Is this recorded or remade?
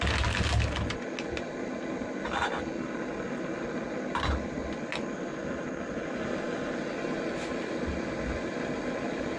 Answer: recorded